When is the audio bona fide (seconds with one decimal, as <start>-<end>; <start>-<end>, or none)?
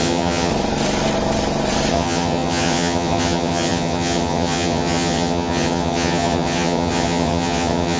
0.5-1.9